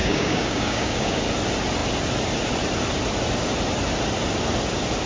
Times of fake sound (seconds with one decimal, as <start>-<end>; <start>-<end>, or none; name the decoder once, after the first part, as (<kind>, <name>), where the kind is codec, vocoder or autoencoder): 0.0-1.2 (codec, DAC)